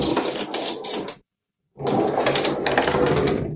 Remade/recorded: remade